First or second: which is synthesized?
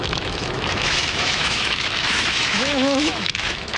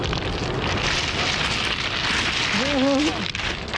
first